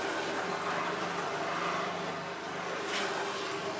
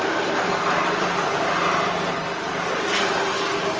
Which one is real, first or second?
first